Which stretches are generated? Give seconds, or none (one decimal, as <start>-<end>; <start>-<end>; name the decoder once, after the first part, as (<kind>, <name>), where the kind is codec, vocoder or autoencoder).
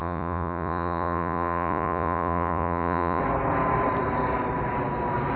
0.0-3.2 (vocoder, Vocos)